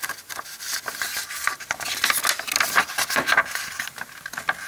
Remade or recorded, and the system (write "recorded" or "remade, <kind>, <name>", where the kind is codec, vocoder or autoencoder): recorded